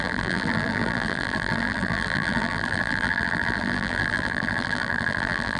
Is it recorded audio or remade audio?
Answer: remade